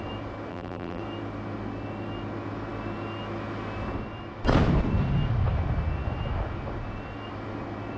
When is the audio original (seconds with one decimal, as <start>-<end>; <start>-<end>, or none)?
0.0-0.5; 1.0-8.0